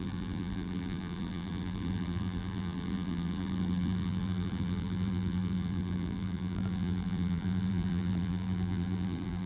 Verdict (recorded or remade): remade